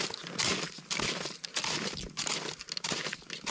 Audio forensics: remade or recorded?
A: recorded